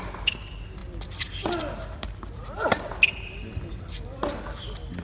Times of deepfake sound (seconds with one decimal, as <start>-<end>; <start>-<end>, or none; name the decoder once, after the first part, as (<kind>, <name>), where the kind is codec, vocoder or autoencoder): none